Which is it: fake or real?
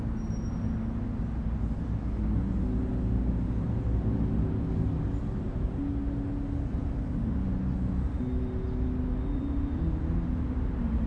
real